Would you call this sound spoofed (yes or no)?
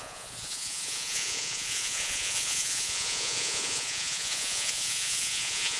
yes